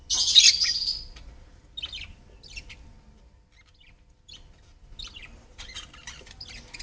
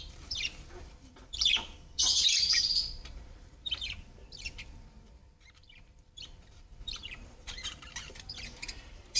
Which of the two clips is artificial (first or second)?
second